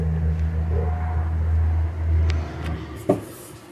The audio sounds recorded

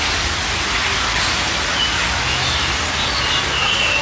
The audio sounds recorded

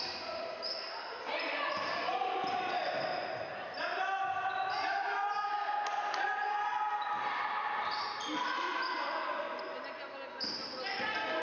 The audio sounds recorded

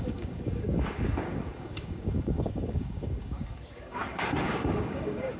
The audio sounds remade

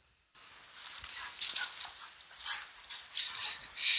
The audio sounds recorded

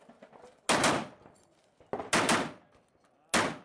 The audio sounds recorded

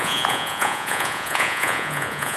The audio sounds remade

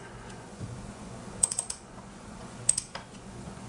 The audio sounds remade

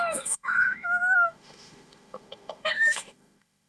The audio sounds remade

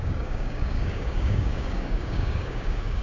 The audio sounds remade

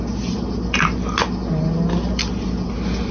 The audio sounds recorded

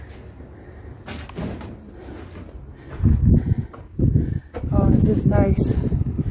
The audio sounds recorded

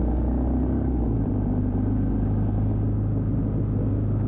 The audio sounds recorded